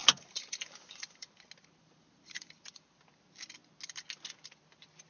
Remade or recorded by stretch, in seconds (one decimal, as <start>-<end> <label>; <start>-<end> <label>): 0.0-1.3 remade; 1.3-1.8 recorded; 1.8-3.0 remade; 3.0-5.1 recorded